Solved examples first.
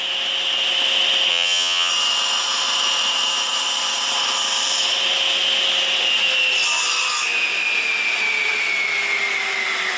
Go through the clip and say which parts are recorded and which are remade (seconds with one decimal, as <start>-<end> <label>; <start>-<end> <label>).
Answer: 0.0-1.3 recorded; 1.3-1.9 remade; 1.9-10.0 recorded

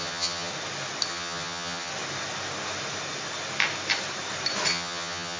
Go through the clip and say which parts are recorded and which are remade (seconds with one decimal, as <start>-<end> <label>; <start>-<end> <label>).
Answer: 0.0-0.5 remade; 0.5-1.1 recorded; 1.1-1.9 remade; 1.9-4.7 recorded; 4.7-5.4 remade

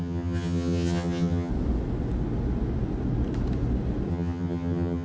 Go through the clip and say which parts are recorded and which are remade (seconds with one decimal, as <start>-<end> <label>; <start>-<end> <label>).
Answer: 0.0-1.5 remade; 1.5-4.1 recorded; 4.1-5.0 remade